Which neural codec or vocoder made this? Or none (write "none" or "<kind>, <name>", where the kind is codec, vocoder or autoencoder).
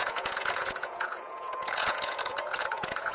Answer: vocoder, Vocos